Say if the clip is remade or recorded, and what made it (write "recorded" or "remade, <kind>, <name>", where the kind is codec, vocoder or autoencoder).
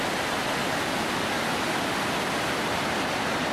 recorded